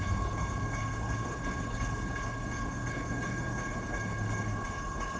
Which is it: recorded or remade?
remade